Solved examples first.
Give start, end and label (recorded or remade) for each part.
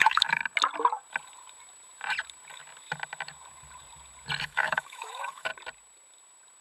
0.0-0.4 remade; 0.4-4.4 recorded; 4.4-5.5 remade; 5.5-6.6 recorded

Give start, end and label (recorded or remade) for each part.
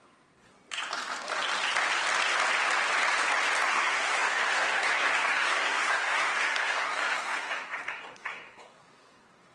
0.0-0.5 remade; 0.5-3.7 recorded; 3.7-9.5 remade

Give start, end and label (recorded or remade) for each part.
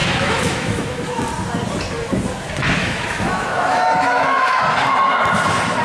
0.0-1.2 remade; 1.2-2.8 recorded; 2.8-4.6 remade; 4.6-5.8 recorded